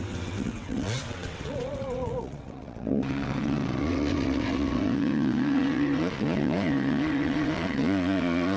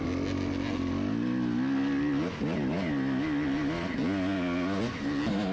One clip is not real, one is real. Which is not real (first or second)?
first